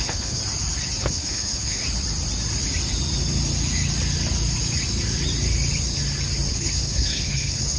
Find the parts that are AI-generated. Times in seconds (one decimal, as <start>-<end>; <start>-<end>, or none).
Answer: 0.0-0.4; 1.0-1.8; 6.5-7.8